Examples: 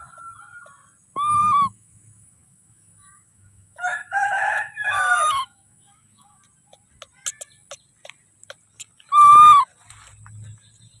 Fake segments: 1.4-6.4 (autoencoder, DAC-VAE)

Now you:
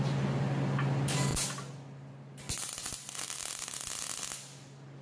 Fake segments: none

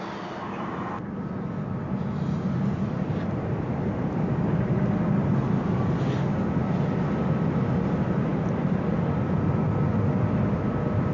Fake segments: none

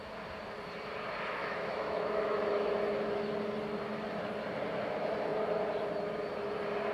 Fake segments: 1.4-2.7 (autoencoder, DAC-VAE)